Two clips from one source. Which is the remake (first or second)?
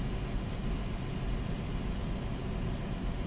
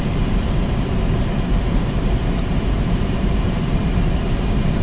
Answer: second